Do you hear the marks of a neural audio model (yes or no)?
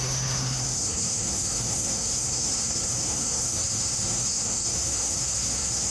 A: yes